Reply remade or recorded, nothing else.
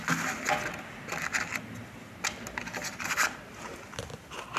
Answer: recorded